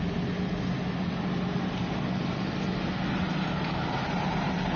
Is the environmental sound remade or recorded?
recorded